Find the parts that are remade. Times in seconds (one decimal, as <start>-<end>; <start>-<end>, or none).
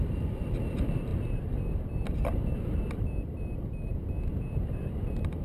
none